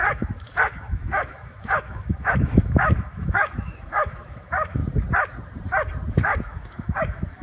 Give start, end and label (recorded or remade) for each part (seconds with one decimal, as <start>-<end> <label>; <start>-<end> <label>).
0.0-4.8 remade; 4.8-6.1 recorded; 6.1-7.4 remade